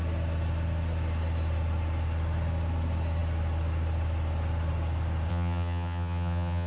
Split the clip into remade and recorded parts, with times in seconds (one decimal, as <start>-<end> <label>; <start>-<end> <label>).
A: 0.0-5.3 recorded; 5.3-6.7 remade